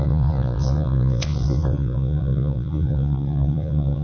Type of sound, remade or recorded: remade